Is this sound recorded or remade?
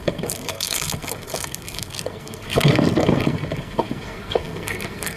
remade